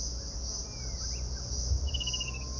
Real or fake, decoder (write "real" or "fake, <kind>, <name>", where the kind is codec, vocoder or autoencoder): real